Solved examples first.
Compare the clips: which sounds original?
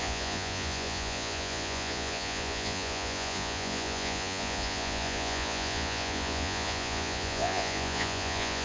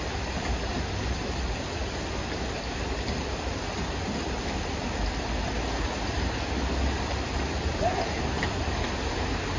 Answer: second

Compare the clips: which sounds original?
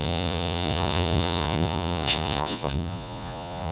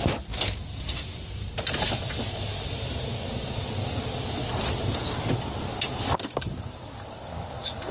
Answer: second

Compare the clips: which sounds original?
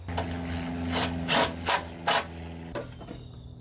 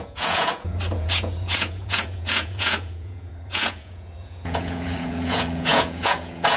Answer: first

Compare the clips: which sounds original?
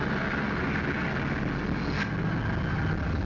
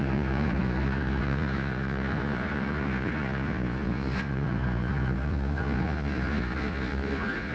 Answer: first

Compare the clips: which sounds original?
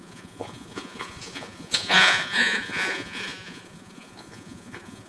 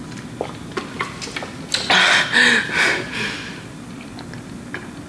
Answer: second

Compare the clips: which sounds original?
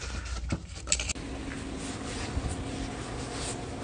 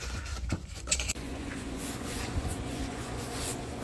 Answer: first